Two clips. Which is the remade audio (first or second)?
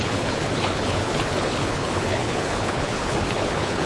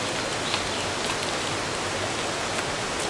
first